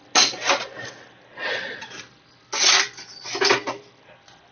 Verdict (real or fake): real